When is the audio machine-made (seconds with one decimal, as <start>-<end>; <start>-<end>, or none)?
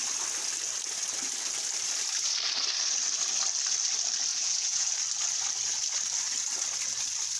4.3-4.9